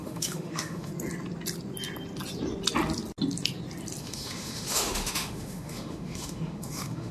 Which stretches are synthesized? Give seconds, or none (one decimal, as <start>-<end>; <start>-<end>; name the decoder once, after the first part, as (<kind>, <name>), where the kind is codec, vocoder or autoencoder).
0.0-0.9 (autoencoder, DAC-VAE); 4.0-7.1